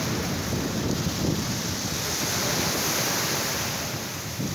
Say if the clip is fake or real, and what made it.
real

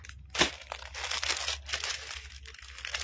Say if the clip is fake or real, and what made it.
real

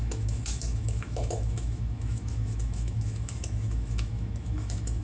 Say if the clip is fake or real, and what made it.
fake, autoencoder, DAC-VAE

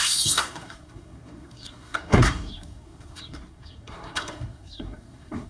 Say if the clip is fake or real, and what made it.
fake, codec, SNAC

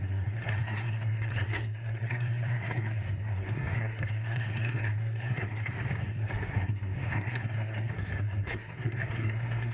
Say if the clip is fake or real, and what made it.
fake, codec, SNAC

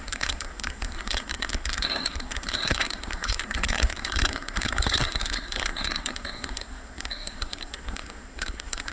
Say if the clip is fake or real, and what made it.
fake, codec, SNAC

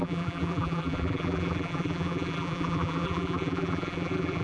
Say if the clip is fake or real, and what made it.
fake, vocoder, BigVGAN v2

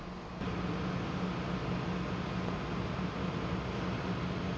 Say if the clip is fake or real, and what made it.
real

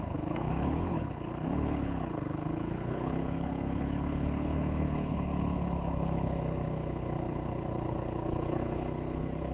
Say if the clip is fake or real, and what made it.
fake, codec, HILCodec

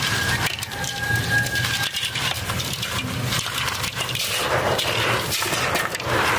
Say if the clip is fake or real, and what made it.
fake, vocoder, BigVGAN v2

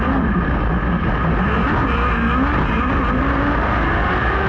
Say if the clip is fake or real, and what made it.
real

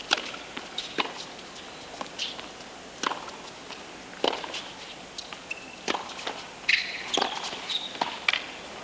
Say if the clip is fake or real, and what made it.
real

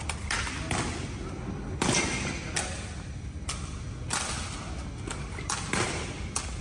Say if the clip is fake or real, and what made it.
real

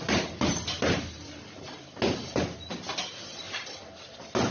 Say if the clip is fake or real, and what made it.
real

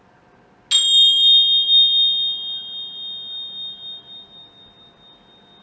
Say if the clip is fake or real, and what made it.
real